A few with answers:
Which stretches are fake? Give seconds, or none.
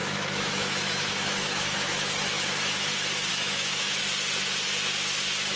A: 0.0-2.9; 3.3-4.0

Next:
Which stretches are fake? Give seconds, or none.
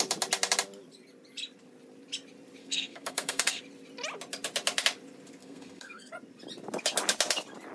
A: 2.6-3.6; 5.4-6.1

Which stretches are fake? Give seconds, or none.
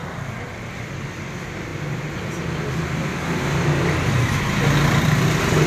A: none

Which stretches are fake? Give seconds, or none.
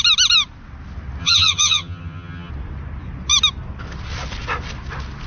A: 1.2-2.5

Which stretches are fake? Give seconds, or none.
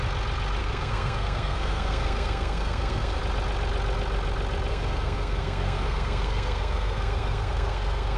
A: 0.6-3.2; 4.7-8.2